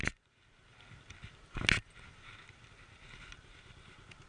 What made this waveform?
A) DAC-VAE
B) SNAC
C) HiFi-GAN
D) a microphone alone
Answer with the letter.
D